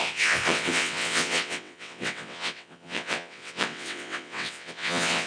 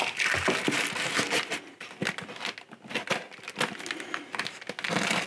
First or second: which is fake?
first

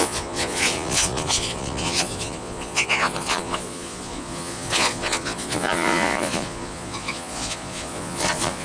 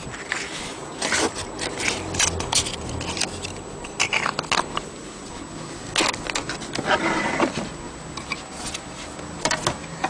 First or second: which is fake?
first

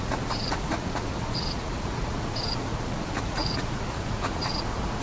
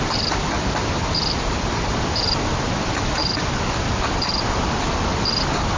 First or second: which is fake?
first